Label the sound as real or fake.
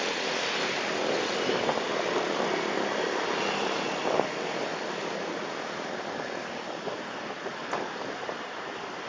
real